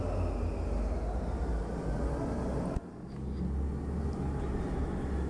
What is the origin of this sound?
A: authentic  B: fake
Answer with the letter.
A